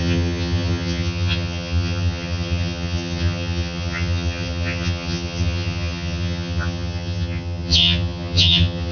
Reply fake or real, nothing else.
fake